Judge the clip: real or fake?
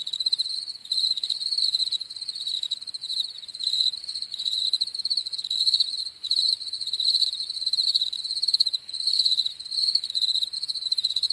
fake